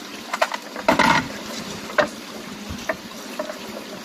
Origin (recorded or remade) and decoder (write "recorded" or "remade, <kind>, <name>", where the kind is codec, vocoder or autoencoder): remade, vocoder, BigVGAN v2